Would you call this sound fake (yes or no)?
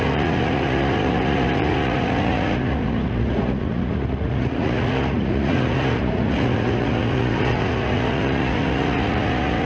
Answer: yes